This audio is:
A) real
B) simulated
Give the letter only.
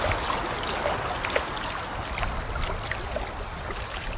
A